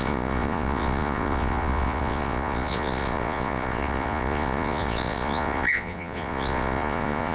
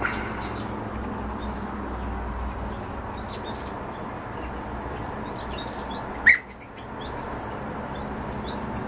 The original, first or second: second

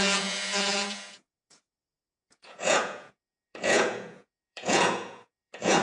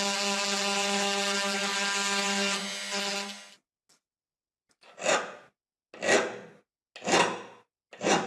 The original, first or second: second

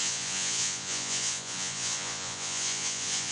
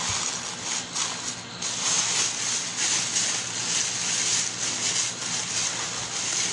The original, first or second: second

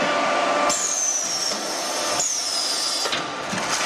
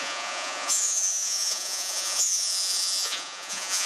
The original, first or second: first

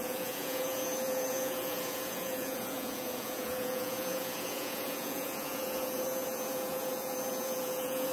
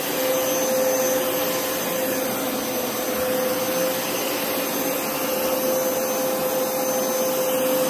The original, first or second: second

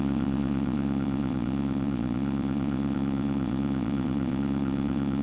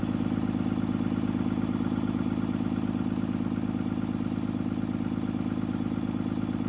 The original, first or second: second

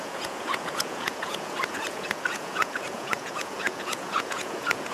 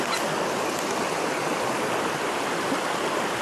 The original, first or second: second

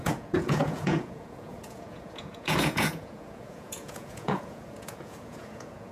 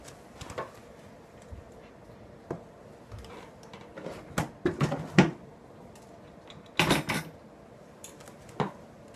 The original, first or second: second